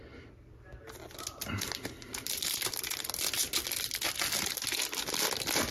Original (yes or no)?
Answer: yes